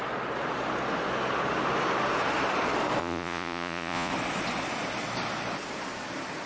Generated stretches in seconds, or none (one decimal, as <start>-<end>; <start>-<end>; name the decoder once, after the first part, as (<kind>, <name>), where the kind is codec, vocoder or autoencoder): 3.0-4.1 (vocoder, Vocos)